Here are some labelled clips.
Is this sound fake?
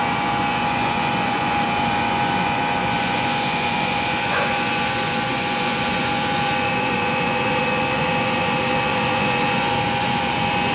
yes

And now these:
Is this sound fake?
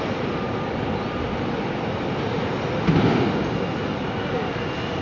no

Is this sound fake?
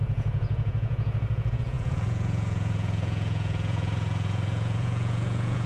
yes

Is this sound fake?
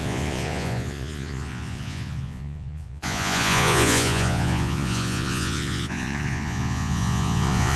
yes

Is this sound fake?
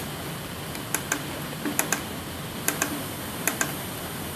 no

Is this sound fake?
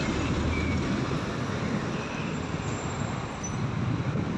no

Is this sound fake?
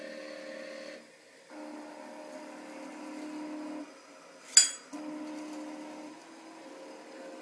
no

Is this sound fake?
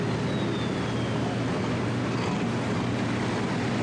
no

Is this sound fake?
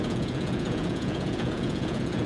yes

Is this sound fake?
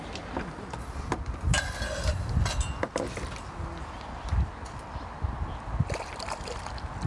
no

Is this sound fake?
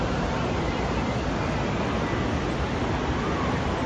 no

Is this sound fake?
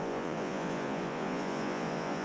yes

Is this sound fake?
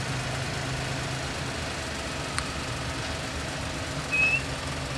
no